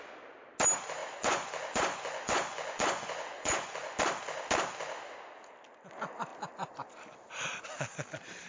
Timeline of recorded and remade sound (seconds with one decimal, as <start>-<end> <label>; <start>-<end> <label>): 0.0-1.0 recorded; 1.0-4.0 remade; 4.0-8.5 recorded